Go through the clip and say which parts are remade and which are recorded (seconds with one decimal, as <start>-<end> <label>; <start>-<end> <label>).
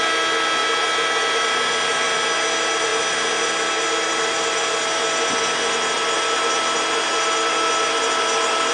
0.0-8.7 recorded